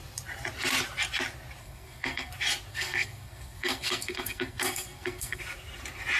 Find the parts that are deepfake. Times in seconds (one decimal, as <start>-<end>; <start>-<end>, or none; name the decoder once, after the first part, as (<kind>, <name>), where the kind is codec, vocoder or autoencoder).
1.6-2.3 (codec, SNAC); 2.7-5.4